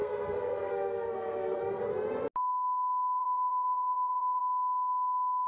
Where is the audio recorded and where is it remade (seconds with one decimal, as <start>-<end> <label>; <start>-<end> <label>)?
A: 0.0-1.6 remade; 1.6-3.2 recorded; 3.2-4.4 remade; 4.4-5.5 recorded